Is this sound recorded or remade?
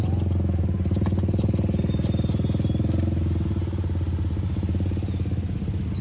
recorded